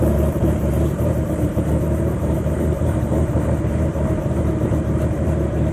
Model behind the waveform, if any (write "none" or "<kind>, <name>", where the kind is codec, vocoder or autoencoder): vocoder, BigVGAN v2